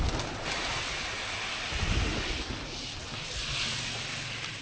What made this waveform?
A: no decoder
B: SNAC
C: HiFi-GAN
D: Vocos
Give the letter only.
A